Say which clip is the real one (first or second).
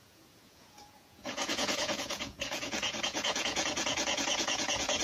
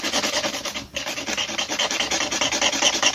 second